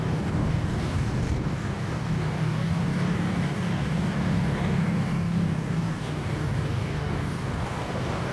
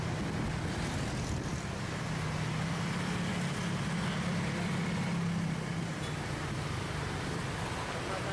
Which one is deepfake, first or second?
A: first